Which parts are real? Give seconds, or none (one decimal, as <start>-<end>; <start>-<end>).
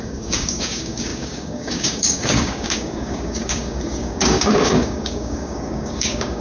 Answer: none